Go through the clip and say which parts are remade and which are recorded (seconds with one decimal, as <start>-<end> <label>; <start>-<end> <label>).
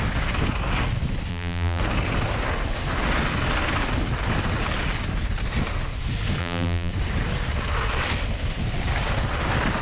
0.0-1.3 recorded; 1.3-1.8 remade; 1.8-6.4 recorded; 6.4-6.9 remade; 6.9-9.8 recorded